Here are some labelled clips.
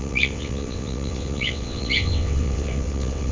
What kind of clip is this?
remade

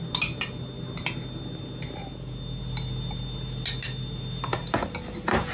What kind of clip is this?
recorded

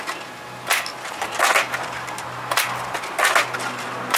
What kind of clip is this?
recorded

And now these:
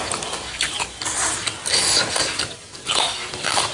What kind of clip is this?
recorded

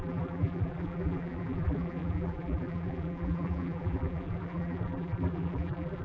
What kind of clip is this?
remade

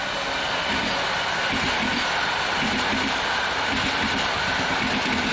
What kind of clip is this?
recorded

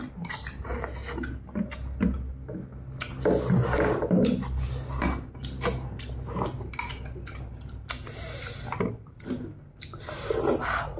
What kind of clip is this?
recorded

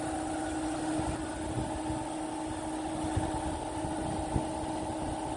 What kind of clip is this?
recorded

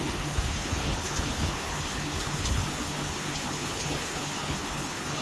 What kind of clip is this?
remade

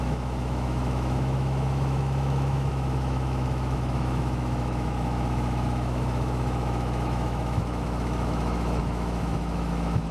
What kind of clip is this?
remade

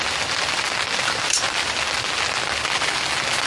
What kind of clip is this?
recorded